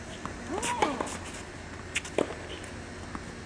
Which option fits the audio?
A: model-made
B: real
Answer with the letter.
B